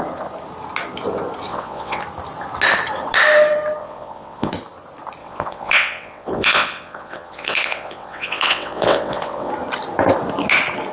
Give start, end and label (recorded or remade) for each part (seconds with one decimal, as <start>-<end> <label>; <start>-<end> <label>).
0.0-1.5 recorded; 1.5-2.0 remade; 2.0-3.8 recorded; 3.8-4.5 remade; 4.5-5.2 recorded; 5.2-9.5 remade; 9.5-10.9 recorded